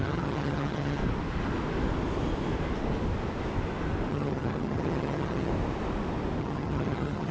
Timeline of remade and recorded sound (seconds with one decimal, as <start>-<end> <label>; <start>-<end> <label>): 0.0-1.0 remade; 1.0-4.1 recorded; 4.1-5.5 remade; 5.5-6.4 recorded; 6.4-7.3 remade